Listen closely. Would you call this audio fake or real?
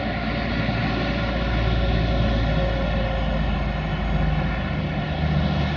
real